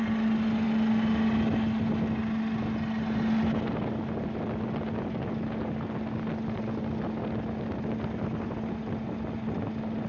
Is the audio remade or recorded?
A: recorded